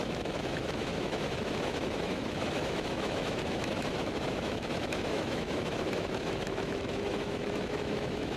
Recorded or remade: remade